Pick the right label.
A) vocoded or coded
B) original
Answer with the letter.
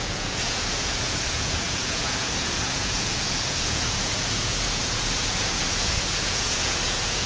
A